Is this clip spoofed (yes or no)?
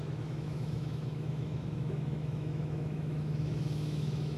yes